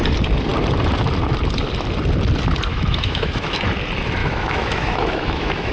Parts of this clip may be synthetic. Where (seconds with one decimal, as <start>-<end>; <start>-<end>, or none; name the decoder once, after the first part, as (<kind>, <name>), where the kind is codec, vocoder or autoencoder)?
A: 2.7-3.6 (autoencoder, DAC-VAE); 4.2-5.7